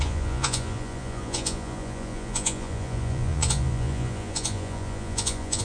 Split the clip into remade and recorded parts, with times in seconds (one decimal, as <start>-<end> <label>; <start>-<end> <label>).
0.0-5.6 remade